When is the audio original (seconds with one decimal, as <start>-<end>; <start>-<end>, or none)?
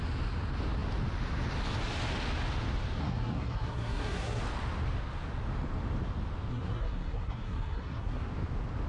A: 0.0-3.0; 4.4-6.5; 8.2-8.9